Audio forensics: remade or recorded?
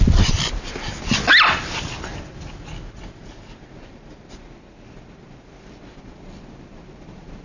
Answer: recorded